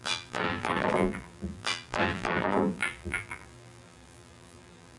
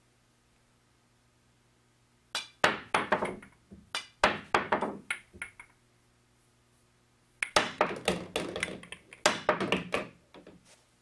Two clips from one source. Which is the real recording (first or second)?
second